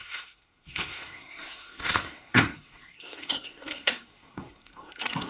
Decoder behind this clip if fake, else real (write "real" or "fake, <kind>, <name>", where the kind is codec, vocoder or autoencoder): fake, codec, SNAC